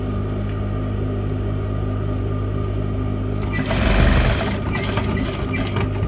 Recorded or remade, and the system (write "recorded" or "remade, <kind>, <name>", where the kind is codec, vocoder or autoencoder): recorded